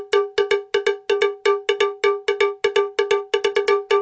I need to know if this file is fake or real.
real